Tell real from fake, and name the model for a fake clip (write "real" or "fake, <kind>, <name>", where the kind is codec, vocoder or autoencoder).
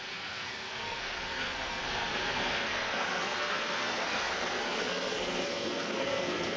fake, codec, SNAC